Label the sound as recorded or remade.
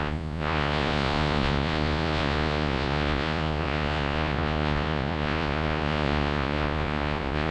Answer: remade